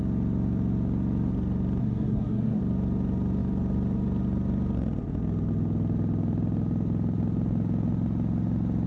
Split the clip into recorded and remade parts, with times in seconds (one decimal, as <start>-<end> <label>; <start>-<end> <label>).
0.0-1.8 recorded; 1.8-2.6 remade; 2.6-8.9 recorded